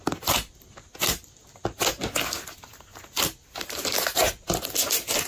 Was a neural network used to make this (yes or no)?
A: no